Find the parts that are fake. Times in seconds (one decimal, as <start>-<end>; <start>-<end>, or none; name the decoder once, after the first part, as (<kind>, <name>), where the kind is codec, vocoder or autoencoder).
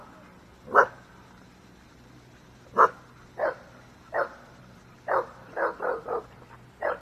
4.2-7.0 (vocoder, BigVGAN v2)